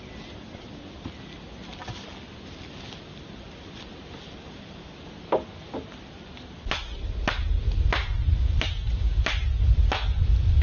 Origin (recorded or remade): recorded